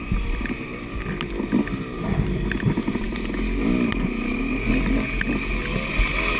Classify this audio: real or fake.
real